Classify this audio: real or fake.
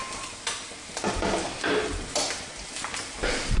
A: real